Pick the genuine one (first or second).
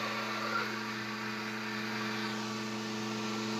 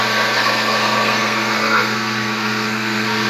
first